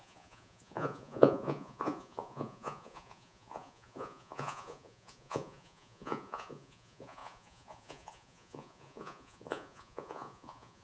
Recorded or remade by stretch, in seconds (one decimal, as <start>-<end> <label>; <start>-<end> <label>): 0.0-10.8 remade